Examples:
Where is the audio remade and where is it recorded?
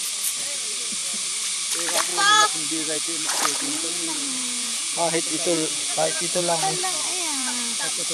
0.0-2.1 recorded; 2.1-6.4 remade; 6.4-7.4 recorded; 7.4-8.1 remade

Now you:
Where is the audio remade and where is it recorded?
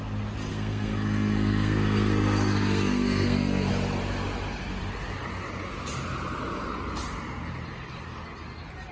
0.0-0.5 recorded; 0.5-3.7 remade; 3.7-8.9 recorded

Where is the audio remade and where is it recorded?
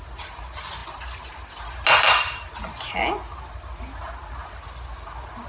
0.0-5.5 recorded